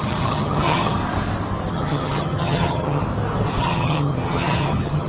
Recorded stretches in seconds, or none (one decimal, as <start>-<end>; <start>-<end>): 1.0-1.7; 3.0-3.6